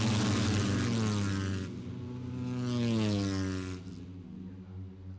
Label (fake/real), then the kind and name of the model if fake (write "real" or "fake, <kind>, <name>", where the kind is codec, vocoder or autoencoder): real